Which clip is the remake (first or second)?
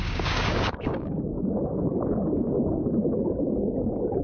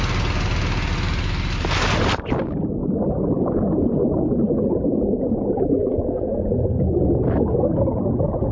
first